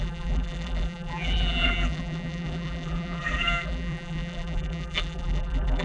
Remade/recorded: remade